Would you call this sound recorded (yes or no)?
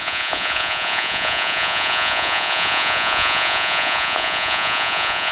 no